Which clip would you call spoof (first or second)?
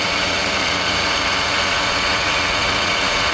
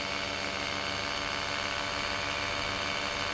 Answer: first